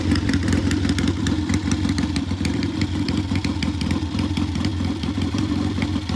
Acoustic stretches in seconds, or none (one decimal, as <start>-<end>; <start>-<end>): 0.6-2.5; 4.7-5.3